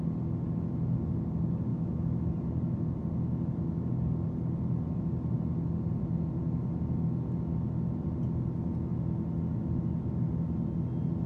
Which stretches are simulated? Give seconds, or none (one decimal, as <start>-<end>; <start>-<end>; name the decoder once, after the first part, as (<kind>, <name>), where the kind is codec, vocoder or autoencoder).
1.7-2.3 (autoencoder, DAC-VAE)